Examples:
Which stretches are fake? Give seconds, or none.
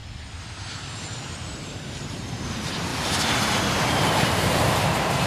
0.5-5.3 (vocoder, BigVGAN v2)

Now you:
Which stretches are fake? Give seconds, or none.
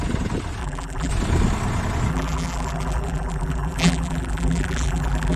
0.6-1.1 (vocoder, BigVGAN v2); 2.1-5.4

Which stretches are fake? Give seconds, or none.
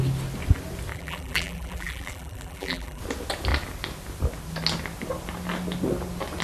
0.9-3.0 (vocoder, BigVGAN v2)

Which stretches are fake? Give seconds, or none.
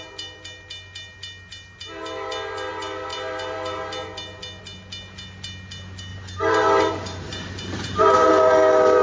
6.1-8.3 (vocoder, BigVGAN v2)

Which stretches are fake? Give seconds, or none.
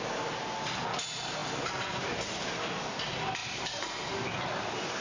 none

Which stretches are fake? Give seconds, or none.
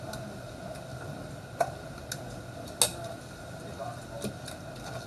none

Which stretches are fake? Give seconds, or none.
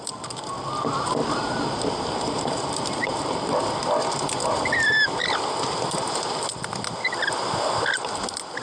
1.2-3.6 (vocoder, BigVGAN v2)